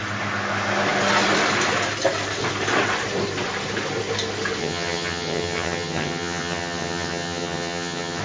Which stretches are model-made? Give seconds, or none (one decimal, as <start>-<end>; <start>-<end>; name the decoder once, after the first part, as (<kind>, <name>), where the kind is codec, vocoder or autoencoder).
4.6-8.2 (vocoder, HiFi-GAN)

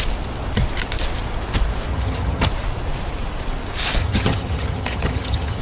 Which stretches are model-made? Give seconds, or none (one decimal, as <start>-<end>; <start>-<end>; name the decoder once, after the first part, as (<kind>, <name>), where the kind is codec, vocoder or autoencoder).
1.9-2.5 (vocoder, HiFi-GAN); 4.0-5.6

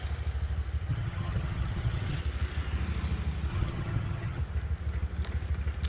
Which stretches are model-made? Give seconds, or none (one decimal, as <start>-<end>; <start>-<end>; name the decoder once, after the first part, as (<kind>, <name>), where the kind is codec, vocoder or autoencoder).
0.9-2.2 (vocoder, HiFi-GAN); 3.5-4.4

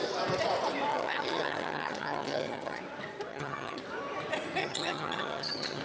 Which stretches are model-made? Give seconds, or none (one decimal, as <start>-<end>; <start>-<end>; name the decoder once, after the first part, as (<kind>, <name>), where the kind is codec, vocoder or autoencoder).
0.9-2.8 (vocoder, HiFi-GAN); 3.3-3.8; 4.6-5.8

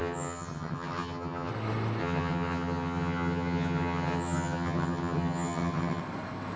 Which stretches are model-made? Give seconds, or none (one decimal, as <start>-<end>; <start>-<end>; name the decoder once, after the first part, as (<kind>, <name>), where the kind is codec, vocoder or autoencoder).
0.0-1.5 (vocoder, HiFi-GAN); 2.0-6.0